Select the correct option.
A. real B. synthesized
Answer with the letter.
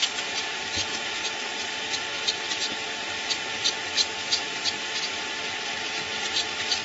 A